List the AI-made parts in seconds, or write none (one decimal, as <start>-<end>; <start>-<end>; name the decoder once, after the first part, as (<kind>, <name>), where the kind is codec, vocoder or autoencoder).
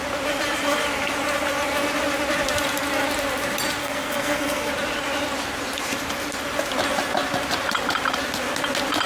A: 3.8-4.7 (codec, SNAC)